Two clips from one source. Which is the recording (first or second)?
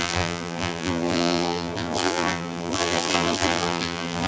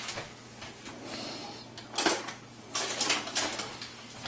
second